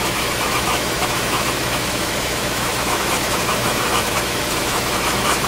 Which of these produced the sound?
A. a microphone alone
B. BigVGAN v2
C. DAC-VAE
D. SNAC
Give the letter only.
C